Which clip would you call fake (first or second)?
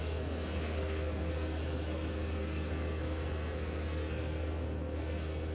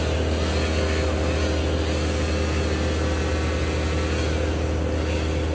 first